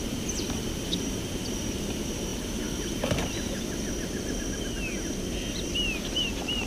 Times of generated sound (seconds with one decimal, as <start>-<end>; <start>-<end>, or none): 0.0-2.3; 5.7-6.7